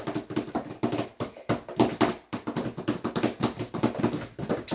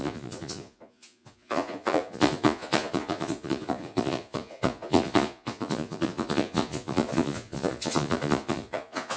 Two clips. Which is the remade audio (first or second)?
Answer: second